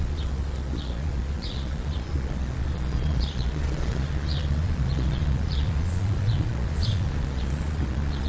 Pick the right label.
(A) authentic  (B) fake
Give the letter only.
B